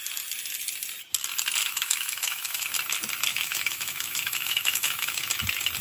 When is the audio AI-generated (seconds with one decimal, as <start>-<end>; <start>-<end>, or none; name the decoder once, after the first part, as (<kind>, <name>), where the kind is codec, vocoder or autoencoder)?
1.6-2.7 (autoencoder, DAC-VAE); 3.3-5.3